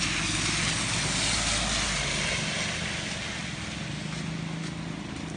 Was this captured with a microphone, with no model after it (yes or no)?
yes